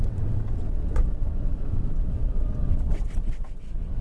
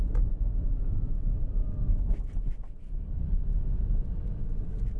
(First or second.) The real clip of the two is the second